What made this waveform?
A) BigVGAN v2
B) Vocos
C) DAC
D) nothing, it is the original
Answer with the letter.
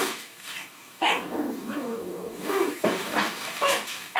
C